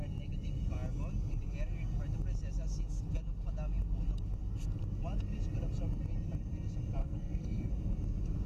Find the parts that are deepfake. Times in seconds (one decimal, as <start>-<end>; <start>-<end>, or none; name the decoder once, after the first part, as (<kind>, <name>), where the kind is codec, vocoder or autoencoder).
7.0-7.7 (codec, SNAC)